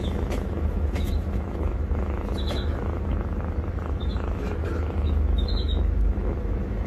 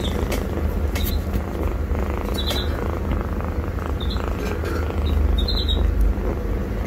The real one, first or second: second